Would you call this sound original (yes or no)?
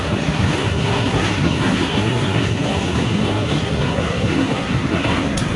no